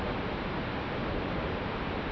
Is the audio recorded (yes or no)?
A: no